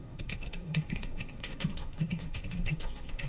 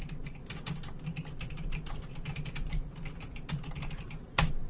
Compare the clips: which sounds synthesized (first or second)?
first